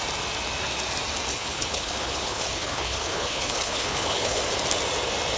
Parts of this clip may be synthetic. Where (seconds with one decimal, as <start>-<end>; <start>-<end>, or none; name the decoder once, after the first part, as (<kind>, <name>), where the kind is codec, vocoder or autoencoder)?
1.3-4.4 (codec, HILCodec)